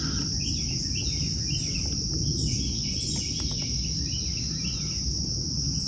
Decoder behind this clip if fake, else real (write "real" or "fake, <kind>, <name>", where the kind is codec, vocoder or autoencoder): real